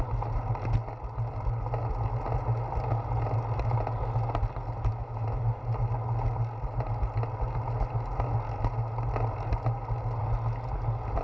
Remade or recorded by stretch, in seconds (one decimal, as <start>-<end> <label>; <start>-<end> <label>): 0.0-4.9 recorded; 4.9-5.6 remade; 5.6-11.2 recorded